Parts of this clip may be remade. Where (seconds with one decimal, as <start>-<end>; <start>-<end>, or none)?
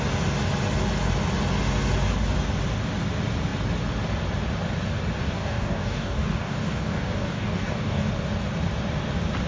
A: 5.2-8.1